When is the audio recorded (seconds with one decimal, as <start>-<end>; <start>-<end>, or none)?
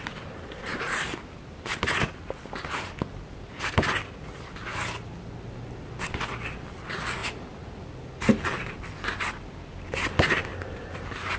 0.0-0.7; 1.3-11.4